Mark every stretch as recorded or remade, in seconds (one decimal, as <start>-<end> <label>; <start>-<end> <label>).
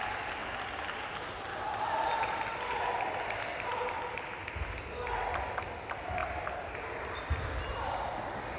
0.0-8.6 recorded